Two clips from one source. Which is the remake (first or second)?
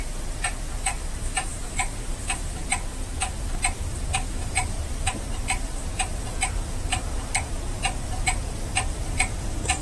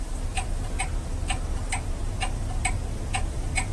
first